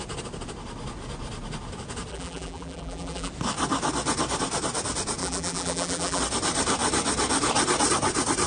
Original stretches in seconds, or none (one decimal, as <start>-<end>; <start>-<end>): 0.0-2.1; 3.3-5.2; 6.2-8.5